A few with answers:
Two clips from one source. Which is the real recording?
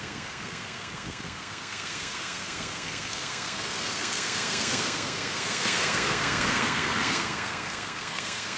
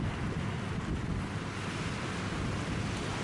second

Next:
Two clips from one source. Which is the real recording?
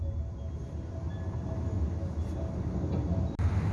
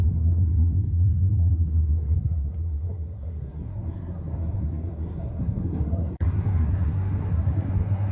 first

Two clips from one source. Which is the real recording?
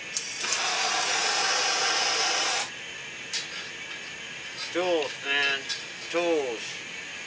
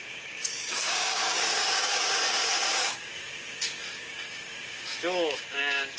first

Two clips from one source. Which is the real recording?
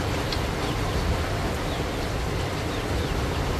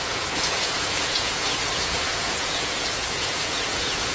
first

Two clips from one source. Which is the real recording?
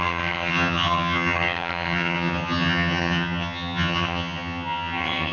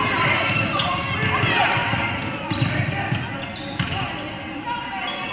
second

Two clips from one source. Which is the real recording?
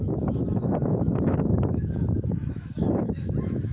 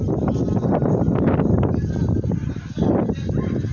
second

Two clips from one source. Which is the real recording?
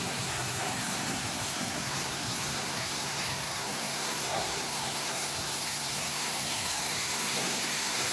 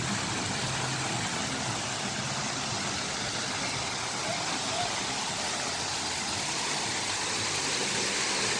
second